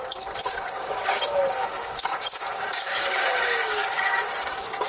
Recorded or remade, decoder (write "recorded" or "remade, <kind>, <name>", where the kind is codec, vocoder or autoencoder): remade, codec, DAC